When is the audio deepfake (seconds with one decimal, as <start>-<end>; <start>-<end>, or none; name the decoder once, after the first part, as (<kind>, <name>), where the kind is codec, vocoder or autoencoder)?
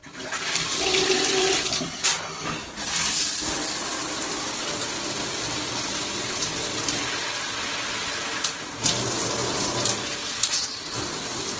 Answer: 0.0-4.6 (vocoder, BigVGAN v2)